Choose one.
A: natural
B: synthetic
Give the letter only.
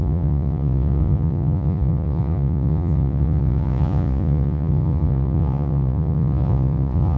B